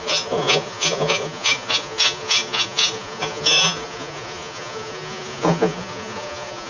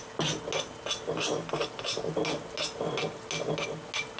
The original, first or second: second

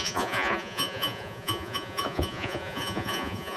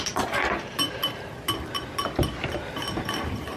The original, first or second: second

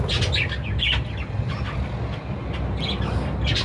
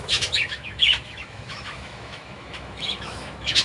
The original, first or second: first